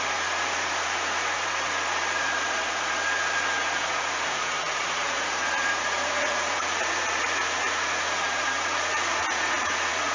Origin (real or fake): fake